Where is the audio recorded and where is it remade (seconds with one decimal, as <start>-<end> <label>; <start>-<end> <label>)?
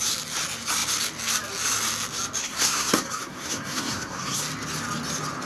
0.0-2.4 recorded; 2.4-4.4 remade; 4.4-5.4 recorded